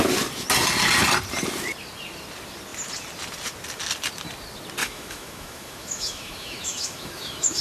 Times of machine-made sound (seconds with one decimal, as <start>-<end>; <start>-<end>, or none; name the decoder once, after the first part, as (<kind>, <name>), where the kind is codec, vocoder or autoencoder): 4.8-7.6 (autoencoder, DAC-VAE)